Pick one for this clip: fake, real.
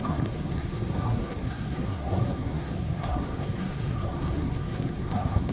fake